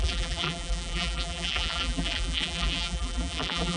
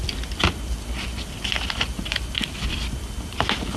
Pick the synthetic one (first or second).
first